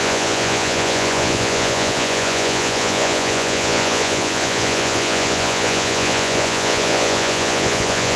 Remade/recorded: remade